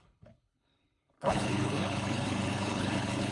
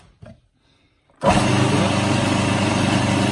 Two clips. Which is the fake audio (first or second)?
first